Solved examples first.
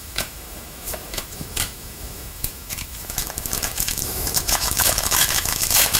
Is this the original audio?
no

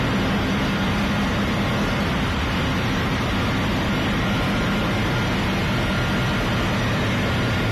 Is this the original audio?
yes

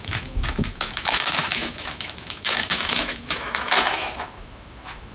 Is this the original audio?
no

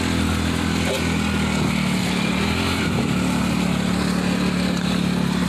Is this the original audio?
yes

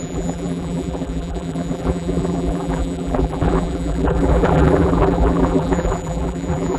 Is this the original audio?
no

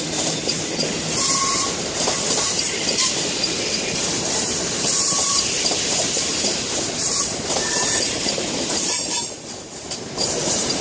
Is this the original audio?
no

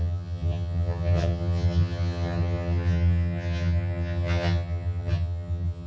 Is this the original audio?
no